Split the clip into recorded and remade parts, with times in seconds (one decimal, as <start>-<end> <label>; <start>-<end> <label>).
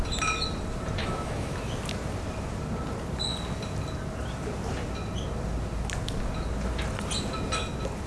0.0-1.0 recorded; 1.0-1.7 remade; 1.7-8.1 recorded